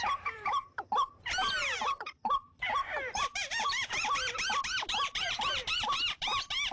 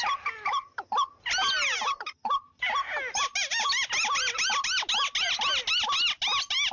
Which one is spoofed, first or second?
first